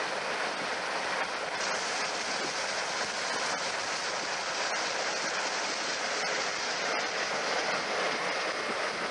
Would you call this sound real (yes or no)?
yes